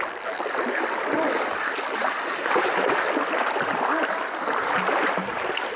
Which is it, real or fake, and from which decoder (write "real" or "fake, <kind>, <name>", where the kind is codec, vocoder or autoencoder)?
real